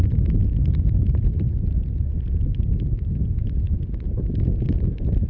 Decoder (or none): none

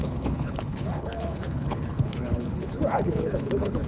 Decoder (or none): codec, HILCodec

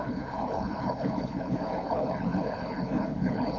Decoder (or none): codec, HILCodec